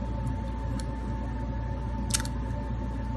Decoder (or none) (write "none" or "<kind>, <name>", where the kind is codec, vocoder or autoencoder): none